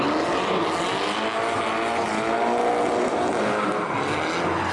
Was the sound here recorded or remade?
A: recorded